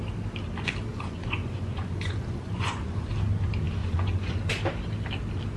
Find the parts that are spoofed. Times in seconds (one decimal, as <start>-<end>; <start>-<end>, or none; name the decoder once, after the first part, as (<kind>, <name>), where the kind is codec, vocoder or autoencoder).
0.9-3.1 (vocoder, Vocos); 3.8-4.6